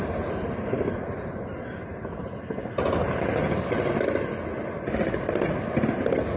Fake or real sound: real